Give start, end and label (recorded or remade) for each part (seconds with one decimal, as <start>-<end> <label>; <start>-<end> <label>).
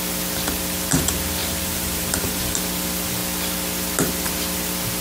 0.0-1.4 recorded; 1.4-2.6 remade; 2.6-5.0 recorded